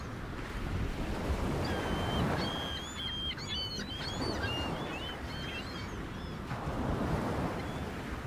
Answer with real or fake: real